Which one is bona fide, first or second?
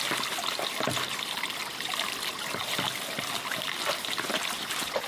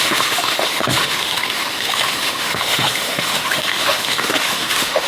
first